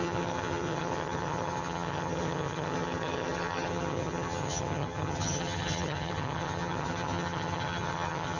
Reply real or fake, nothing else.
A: fake